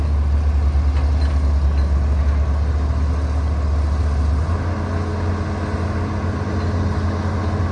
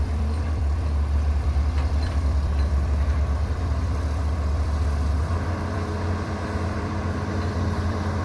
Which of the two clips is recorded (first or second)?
first